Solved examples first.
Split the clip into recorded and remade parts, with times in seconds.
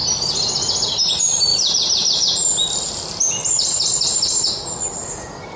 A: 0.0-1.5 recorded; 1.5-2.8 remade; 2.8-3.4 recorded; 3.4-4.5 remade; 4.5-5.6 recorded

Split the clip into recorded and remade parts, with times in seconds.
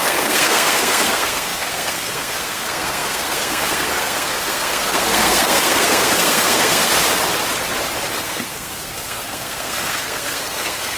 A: 0.0-6.9 remade; 6.9-8.2 recorded; 8.2-11.0 remade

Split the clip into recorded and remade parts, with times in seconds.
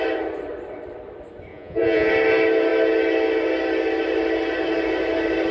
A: 0.0-1.5 recorded; 1.5-2.1 remade; 2.1-5.5 recorded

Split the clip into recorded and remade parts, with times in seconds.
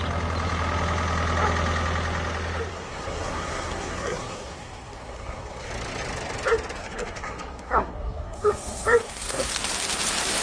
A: 0.0-2.7 recorded; 2.7-5.7 remade; 5.7-6.8 recorded; 6.8-9.5 remade; 9.5-10.4 recorded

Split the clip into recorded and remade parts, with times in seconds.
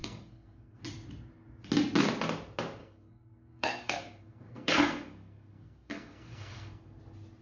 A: 0.0-0.8 remade; 0.8-2.8 recorded; 2.8-7.0 remade; 7.0-7.4 recorded